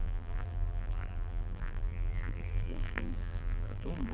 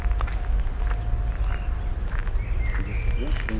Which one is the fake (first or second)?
first